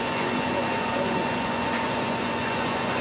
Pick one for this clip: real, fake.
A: fake